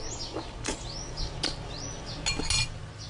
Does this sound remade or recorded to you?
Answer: recorded